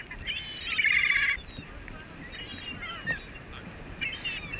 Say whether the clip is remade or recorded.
recorded